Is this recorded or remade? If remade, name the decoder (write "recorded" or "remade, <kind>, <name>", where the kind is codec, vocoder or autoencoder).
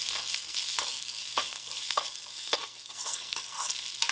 remade, codec, SNAC